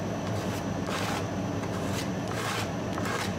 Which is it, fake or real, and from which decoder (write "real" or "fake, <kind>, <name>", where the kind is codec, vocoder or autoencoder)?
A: real